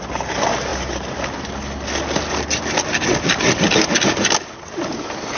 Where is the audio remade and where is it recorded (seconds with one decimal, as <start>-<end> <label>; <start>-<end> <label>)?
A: 0.0-5.4 recorded

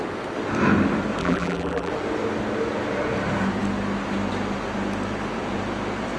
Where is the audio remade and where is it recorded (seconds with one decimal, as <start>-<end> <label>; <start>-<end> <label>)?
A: 0.0-1.2 recorded; 1.2-1.9 remade; 1.9-6.2 recorded

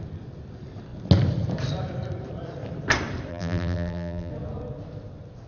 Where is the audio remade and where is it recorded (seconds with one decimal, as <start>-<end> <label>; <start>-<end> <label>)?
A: 0.0-3.3 recorded; 3.3-4.3 remade; 4.3-5.5 recorded

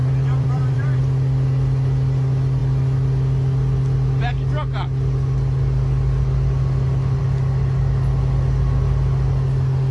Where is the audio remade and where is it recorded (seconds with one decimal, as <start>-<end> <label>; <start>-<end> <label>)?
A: 0.0-1.0 remade; 1.0-9.9 recorded

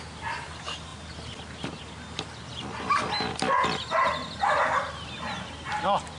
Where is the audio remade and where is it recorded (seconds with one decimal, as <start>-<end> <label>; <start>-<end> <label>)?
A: 0.0-6.2 recorded

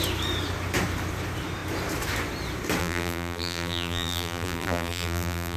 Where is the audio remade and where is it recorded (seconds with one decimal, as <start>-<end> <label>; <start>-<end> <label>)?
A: 0.0-2.8 recorded; 2.8-5.6 remade